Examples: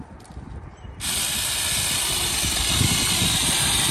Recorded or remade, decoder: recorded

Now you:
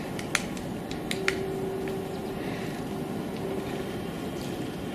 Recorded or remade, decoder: recorded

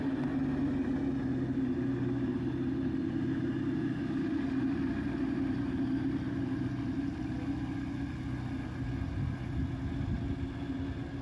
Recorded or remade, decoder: recorded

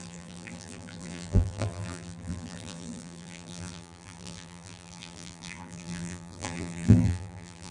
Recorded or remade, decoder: remade, vocoder, BigVGAN v2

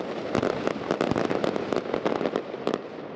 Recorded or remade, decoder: recorded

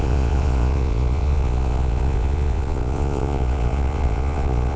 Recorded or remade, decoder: remade, vocoder, Vocos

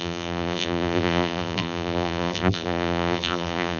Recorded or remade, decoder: remade, vocoder, BigVGAN v2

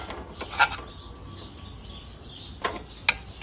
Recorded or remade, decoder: recorded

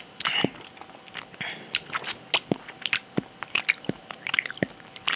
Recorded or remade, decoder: recorded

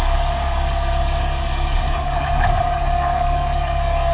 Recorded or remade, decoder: remade, codec, DAC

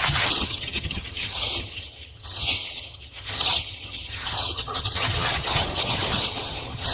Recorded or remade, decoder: remade, vocoder, HiFi-GAN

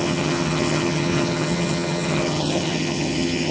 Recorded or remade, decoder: remade, vocoder, HiFi-GAN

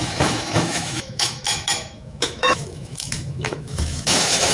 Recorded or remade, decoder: remade, autoencoder, DAC-VAE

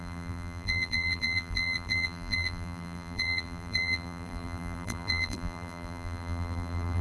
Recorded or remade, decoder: remade, vocoder, BigVGAN v2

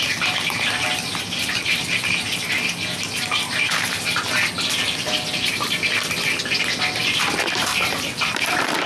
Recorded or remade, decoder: recorded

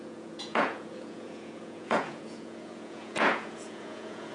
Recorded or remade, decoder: remade, vocoder, Vocos